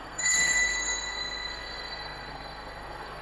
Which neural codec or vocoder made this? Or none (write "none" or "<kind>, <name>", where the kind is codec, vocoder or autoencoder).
codec, SNAC